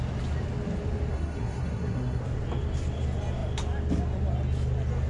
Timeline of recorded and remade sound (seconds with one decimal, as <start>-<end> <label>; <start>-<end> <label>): 0.0-1.1 recorded; 1.1-2.2 remade; 2.2-5.1 recorded